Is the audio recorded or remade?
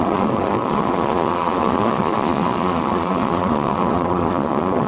remade